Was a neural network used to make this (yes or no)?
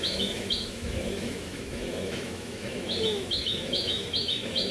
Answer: yes